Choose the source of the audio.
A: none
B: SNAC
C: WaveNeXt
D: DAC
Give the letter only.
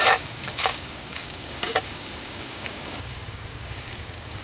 D